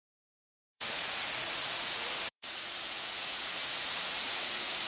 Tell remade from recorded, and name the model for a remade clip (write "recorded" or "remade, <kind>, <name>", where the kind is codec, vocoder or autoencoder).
remade, vocoder, Vocos